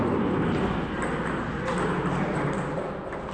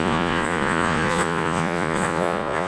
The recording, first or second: first